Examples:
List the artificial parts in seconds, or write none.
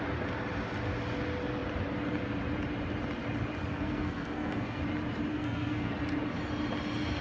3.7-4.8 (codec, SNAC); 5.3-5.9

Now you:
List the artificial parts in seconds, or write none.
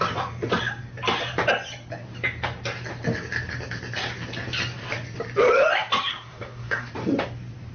6.1-6.9 (codec, SNAC)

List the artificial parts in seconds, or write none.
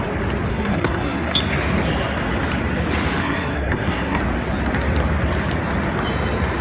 0.5-1.4 (codec, SNAC); 3.2-4.2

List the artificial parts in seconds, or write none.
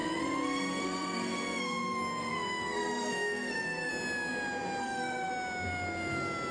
0.0-3.9 (codec, SNAC); 4.8-5.3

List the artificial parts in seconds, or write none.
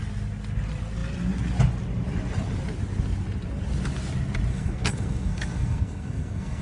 4.5-6.6 (codec, SNAC)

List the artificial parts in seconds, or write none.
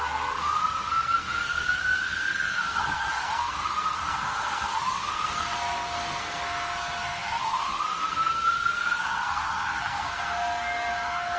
0.0-11.4 (codec, SNAC)